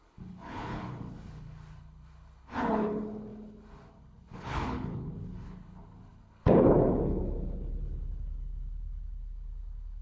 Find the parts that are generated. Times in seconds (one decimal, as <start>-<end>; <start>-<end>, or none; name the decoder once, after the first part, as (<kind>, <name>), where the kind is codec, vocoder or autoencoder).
0.0-10.0 (codec, HILCodec)